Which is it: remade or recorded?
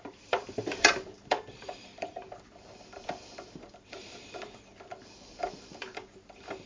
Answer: remade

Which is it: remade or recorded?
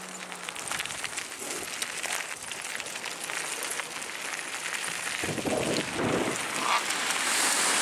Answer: recorded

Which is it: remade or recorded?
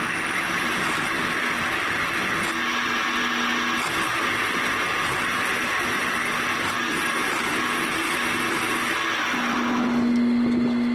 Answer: recorded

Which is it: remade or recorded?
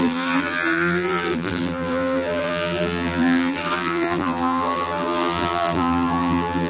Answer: remade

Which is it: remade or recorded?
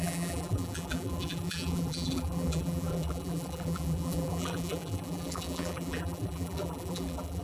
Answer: remade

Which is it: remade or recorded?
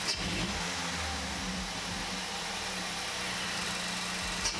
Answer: recorded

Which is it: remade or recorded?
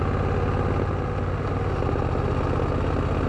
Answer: recorded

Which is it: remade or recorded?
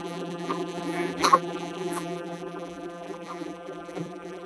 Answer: remade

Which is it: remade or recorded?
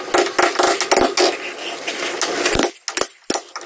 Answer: recorded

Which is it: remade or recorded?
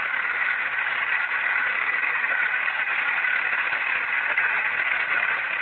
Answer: recorded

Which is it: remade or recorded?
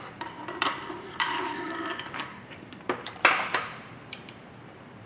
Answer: remade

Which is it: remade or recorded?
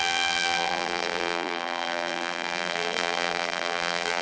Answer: remade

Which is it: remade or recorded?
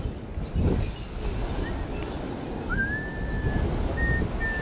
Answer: recorded